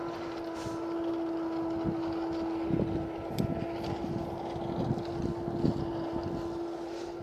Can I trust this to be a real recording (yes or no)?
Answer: yes